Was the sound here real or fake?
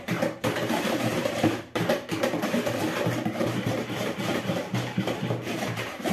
fake